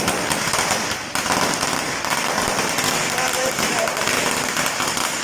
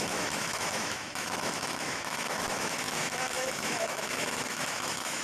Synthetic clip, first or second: second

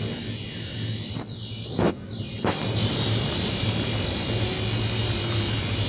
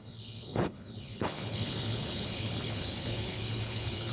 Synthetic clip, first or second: second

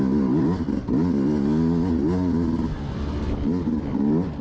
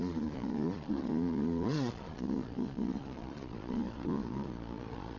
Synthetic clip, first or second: second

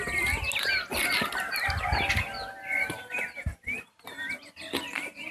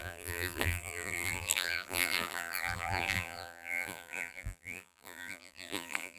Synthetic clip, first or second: second